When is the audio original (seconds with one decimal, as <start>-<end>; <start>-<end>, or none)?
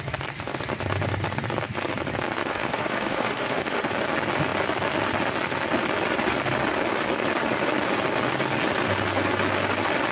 0.0-2.4; 3.9-10.1